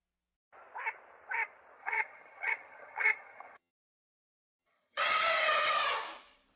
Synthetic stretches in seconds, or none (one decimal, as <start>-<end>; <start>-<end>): 1.8-3.7; 4.6-5.7